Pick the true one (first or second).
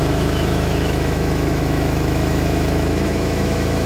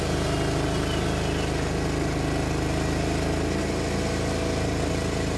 second